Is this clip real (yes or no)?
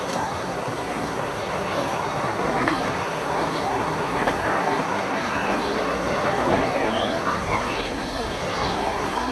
no